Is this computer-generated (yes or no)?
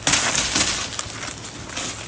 no